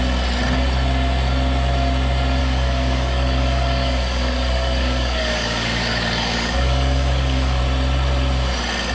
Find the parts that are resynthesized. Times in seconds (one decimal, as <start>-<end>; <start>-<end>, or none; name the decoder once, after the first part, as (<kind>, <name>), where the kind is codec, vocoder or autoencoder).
2.4-7.6 (codec, DAC)